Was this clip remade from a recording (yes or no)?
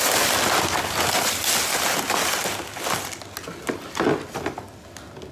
no